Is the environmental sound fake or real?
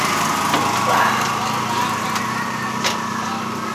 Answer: real